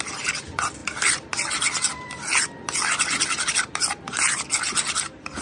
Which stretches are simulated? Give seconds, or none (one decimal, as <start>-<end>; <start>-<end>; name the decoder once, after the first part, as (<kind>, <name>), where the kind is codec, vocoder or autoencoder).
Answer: none